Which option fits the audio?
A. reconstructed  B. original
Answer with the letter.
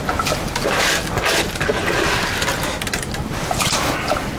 B